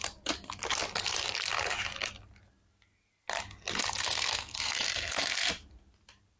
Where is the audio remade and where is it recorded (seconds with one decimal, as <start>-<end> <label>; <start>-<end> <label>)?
0.0-4.0 recorded; 4.0-5.5 remade; 5.5-6.4 recorded